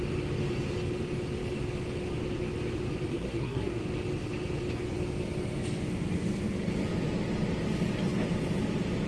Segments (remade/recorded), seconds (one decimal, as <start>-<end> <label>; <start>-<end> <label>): 0.0-3.1 recorded; 3.1-3.8 remade; 3.8-9.1 recorded